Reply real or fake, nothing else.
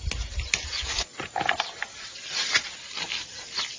real